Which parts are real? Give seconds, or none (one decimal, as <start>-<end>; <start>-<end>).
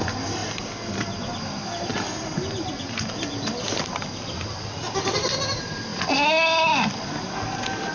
0.0-7.9